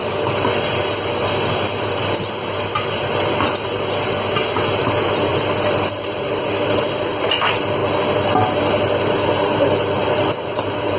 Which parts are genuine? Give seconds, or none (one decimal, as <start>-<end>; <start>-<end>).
0.0-5.3; 6.8-10.0